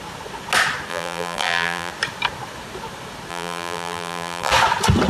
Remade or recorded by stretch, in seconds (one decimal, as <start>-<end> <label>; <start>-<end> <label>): 0.0-0.9 recorded; 0.9-1.9 remade; 1.9-3.3 recorded; 3.3-4.5 remade; 4.5-5.1 recorded